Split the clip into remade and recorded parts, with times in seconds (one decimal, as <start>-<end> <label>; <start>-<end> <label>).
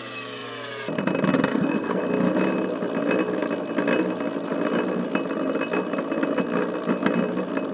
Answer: 0.0-1.5 recorded; 1.5-2.0 remade; 2.0-7.7 recorded